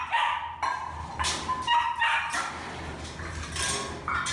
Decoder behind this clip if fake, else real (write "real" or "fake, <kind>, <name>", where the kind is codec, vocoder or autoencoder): real